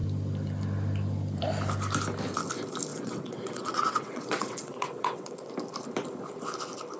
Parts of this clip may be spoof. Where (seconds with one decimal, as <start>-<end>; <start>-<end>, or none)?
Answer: 2.9-5.5